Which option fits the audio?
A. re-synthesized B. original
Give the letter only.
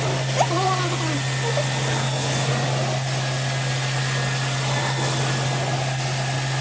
B